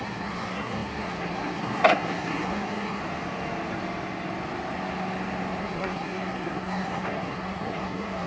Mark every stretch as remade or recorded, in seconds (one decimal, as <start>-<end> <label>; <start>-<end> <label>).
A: 0.0-3.0 remade; 3.0-5.6 recorded; 5.6-8.3 remade